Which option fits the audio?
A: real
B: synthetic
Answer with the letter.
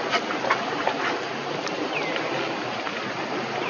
A